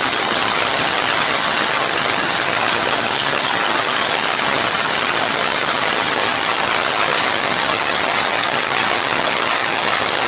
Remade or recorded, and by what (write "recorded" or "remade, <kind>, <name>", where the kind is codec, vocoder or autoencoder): remade, vocoder, HiFi-GAN